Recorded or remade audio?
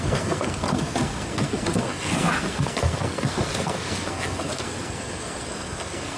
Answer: remade